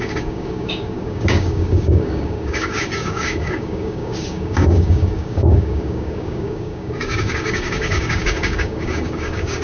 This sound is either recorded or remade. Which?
remade